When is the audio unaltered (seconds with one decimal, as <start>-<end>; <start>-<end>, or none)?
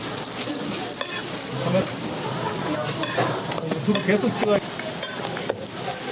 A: 0.0-6.1